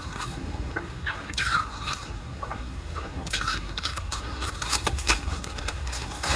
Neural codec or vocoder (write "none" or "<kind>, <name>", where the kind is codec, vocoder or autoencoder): codec, SNAC